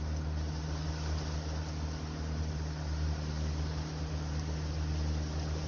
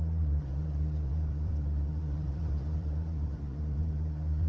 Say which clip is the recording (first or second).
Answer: first